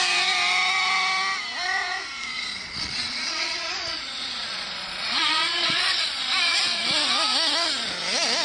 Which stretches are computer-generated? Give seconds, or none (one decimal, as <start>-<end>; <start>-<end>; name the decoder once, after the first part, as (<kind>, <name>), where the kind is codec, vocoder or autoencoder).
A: 2.3-6.2 (vocoder, Vocos)